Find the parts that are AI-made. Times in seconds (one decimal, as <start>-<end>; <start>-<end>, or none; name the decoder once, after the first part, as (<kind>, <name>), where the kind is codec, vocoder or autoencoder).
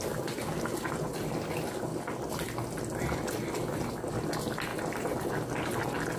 4.7-5.3 (vocoder, BigVGAN v2)